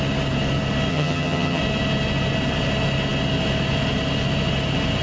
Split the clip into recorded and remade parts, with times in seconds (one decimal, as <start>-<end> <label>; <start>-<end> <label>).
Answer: 0.0-0.9 recorded; 0.9-1.6 remade; 1.6-5.0 recorded